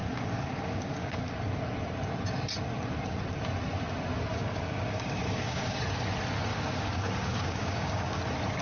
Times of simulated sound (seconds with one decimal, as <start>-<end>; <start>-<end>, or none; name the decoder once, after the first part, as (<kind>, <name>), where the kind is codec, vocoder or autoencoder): 0.0-1.2 (codec, DAC); 4.3-5.8; 6.5-8.2